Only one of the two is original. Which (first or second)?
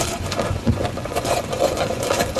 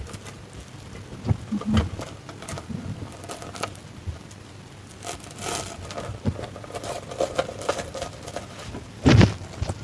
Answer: second